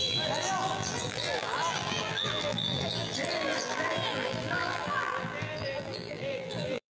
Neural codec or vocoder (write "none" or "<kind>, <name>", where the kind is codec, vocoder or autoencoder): vocoder, BigVGAN v2